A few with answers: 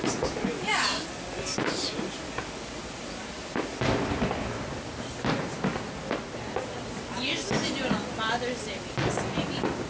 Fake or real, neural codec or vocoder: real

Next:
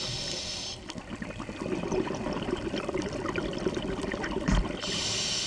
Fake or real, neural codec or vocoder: real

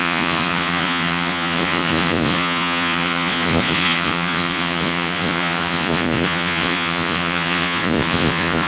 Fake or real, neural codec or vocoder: fake, vocoder, Vocos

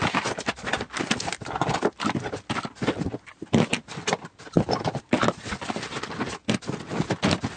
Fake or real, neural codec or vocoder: real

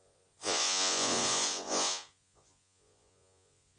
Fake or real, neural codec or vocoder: fake, vocoder, Vocos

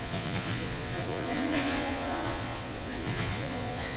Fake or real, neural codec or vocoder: fake, vocoder, Vocos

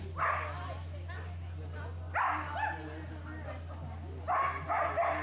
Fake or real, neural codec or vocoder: real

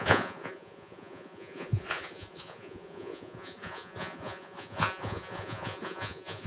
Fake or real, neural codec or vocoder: fake, vocoder, Vocos